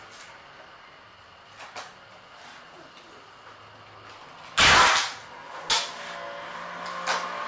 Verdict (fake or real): real